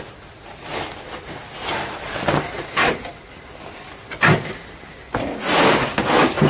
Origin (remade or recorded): recorded